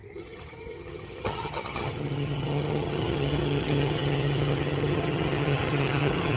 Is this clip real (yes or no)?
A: no